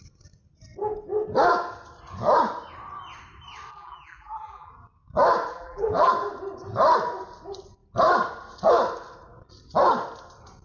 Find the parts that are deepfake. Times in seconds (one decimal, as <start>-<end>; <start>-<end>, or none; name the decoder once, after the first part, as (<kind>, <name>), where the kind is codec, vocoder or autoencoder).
3.7-4.7 (vocoder, BigVGAN v2); 5.5-6.1